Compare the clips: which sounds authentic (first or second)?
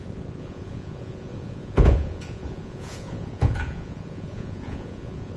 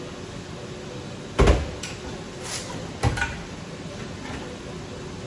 second